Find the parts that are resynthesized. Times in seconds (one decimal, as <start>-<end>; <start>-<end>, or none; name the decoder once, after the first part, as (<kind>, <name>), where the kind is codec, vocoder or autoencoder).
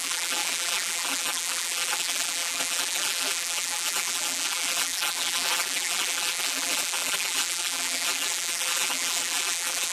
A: 0.0-9.9 (vocoder, BigVGAN v2)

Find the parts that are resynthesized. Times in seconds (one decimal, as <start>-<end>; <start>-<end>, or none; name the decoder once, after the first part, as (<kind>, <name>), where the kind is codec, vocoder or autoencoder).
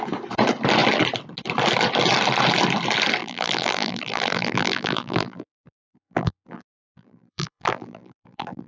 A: 3.2-8.7 (vocoder, BigVGAN v2)